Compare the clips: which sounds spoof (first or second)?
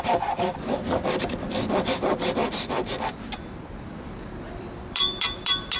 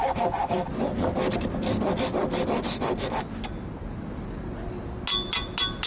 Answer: first